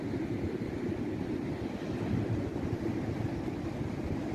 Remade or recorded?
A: recorded